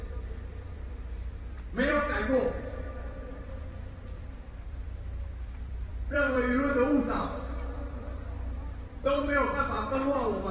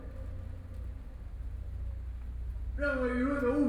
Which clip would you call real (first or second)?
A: second